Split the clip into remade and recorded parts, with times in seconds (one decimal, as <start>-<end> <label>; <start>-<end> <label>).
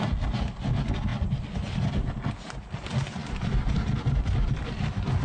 0.0-5.2 recorded